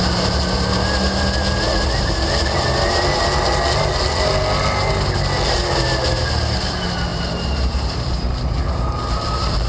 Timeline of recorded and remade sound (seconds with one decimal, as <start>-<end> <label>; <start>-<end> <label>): 0.0-7.1 recorded; 7.1-9.7 remade